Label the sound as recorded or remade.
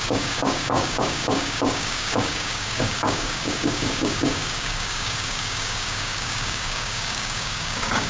remade